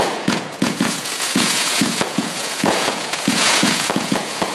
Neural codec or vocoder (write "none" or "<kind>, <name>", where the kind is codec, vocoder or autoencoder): vocoder, Vocos